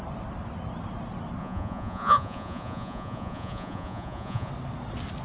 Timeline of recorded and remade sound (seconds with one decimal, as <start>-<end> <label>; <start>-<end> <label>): 0.0-1.4 recorded; 1.4-4.5 remade; 4.5-5.2 recorded